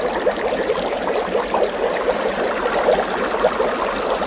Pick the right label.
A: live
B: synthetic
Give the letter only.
A